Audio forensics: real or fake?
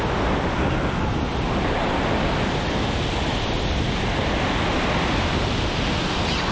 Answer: real